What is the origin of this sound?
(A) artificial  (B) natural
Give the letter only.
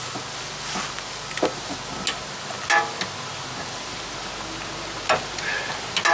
B